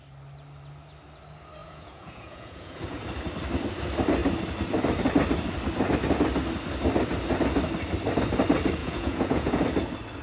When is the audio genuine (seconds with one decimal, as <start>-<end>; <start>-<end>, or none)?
0.0-1.6; 3.0-8.8; 9.6-10.2